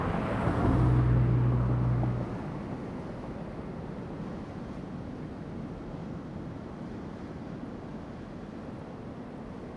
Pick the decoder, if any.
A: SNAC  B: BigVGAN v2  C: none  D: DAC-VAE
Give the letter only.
C